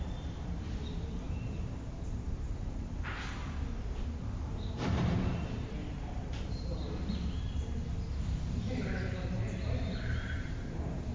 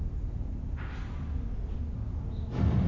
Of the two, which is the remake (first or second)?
first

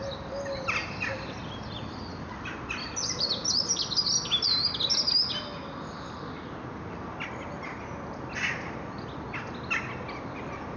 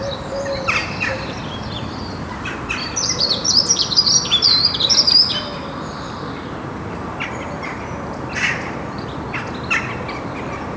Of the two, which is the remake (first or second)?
second